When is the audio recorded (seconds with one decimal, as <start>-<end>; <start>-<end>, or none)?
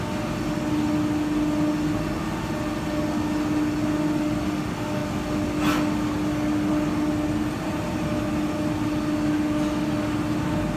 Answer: 0.0-10.8